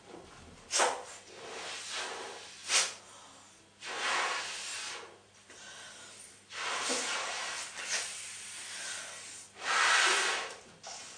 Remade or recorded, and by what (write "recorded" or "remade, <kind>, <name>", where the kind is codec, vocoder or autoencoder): recorded